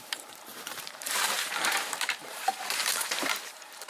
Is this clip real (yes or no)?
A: no